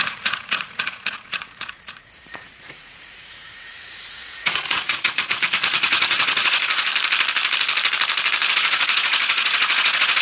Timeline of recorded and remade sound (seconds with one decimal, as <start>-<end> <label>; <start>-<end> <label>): 0.0-6.9 remade; 6.9-8.5 recorded; 8.5-10.2 remade